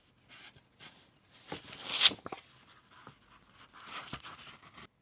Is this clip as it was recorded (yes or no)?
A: yes